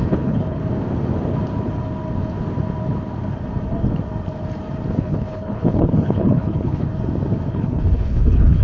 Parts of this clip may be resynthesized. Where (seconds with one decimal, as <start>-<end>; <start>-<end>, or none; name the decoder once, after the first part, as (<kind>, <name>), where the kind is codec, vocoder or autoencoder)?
0.0-0.6 (codec, HILCodec); 4.9-6.9; 7.5-8.6